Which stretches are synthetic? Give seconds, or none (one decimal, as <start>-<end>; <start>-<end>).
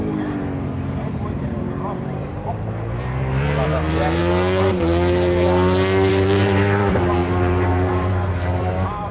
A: 0.0-4.2; 6.1-9.1